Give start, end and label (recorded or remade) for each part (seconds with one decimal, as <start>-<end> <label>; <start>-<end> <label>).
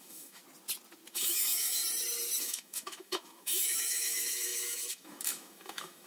0.0-0.4 remade; 0.4-1.1 recorded; 1.1-1.8 remade; 1.8-2.4 recorded; 2.4-6.1 remade